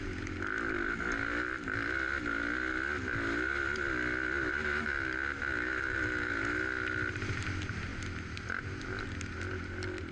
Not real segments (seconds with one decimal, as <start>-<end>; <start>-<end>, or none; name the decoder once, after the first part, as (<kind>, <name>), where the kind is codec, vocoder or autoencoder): 5.5-6.4 (autoencoder, DAC-VAE)